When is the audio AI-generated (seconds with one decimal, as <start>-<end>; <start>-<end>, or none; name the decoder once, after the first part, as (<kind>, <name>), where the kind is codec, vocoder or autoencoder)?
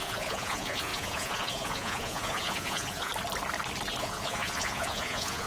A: 0.0-3.1 (vocoder, Vocos); 4.0-5.5